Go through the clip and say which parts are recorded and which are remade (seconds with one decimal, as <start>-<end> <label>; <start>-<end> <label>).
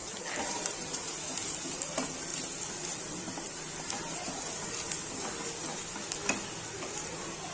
0.0-1.3 remade; 1.3-7.5 recorded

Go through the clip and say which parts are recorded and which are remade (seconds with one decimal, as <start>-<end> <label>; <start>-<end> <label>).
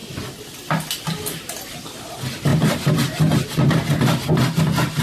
0.0-5.0 recorded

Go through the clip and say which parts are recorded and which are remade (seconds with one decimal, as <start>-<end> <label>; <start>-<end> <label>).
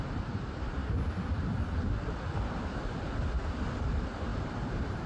0.0-0.8 remade; 0.8-3.9 recorded; 3.9-5.1 remade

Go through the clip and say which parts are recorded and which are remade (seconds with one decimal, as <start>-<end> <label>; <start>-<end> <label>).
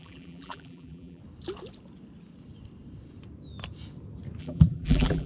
0.0-1.2 remade; 1.2-4.4 recorded; 4.4-5.3 remade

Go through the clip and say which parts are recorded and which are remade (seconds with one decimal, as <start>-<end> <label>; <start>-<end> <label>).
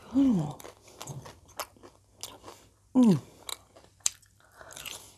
0.0-3.5 recorded; 3.5-4.2 remade; 4.2-5.2 recorded